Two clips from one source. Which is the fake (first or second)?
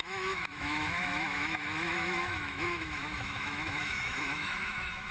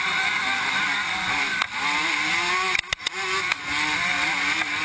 first